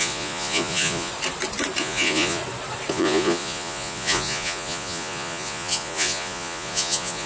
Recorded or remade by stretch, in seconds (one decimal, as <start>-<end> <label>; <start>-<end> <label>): 0.0-1.1 remade; 1.1-1.8 recorded; 1.8-2.4 remade; 2.4-2.9 recorded; 2.9-7.3 remade